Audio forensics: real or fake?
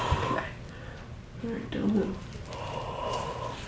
real